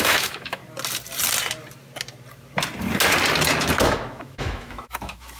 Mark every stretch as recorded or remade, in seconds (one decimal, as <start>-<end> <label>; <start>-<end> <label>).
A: 0.0-0.6 remade; 0.6-3.8 recorded; 3.8-5.4 remade